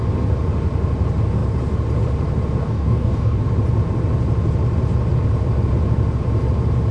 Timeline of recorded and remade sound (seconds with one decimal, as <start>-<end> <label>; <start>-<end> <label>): 0.0-2.6 recorded; 2.6-3.4 remade; 3.4-6.9 recorded